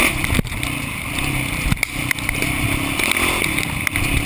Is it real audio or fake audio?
real